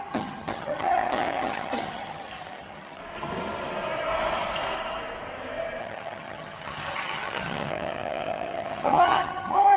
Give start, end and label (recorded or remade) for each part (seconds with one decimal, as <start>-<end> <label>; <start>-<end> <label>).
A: 0.0-3.0 remade; 3.0-5.8 recorded; 5.8-9.8 remade